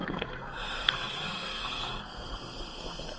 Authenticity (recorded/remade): remade